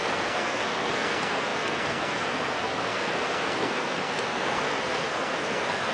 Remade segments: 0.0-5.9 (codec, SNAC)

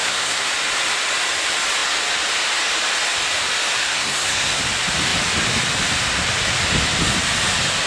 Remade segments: 0.0-0.5 (codec, SNAC); 3.8-4.6

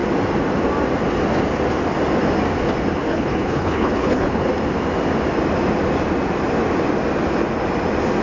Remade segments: 3.1-4.4 (codec, HILCodec)

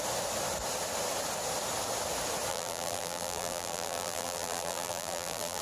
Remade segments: 2.5-5.6 (vocoder, BigVGAN v2)

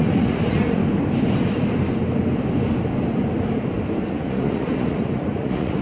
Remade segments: 0.0-0.8 (vocoder, Vocos); 4.1-5.8

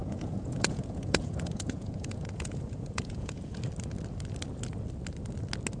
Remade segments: 0.0-3.5 (vocoder, Vocos)

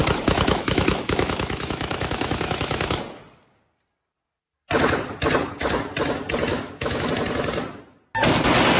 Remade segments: 0.0-3.0 (autoencoder, DAC-VAE); 6.5-7.1